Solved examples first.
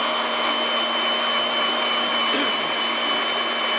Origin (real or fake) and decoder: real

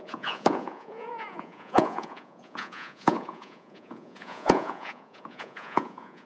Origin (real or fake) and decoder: fake, vocoder, Vocos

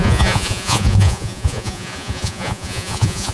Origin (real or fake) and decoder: fake, vocoder, Vocos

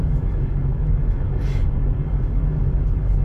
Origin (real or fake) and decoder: fake, codec, DAC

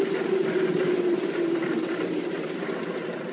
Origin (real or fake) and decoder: real